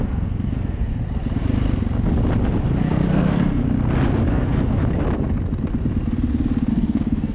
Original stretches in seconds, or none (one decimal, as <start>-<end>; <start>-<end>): 0.9-2.8; 3.6-4.3; 4.8-6.7

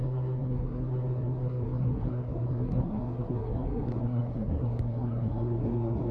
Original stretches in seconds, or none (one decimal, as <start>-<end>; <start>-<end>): none

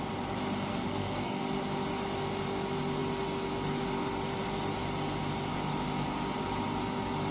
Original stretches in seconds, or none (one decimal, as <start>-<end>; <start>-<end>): 0.0-0.7; 1.4-7.3

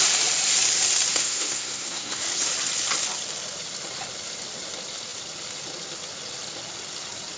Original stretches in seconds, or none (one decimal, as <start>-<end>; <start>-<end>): 0.0-1.1; 2.2-7.4

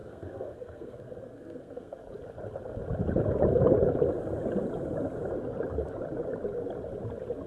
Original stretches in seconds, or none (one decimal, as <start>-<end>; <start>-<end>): 2.0-7.5

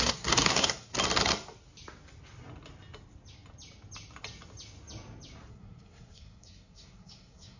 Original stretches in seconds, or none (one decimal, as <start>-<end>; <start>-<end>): 0.9-5.5

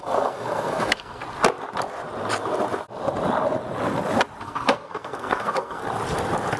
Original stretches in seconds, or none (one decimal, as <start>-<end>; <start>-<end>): 1.2-4.4; 5.8-6.6

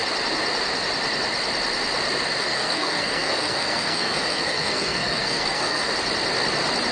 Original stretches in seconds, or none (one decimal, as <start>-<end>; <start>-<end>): 0.0-2.4; 5.9-6.9